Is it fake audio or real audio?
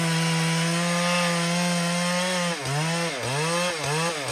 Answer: real